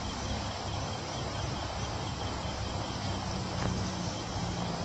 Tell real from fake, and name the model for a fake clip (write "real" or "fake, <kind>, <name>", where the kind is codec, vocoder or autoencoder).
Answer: real